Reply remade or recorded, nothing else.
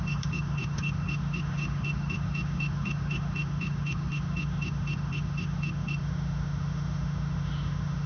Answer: remade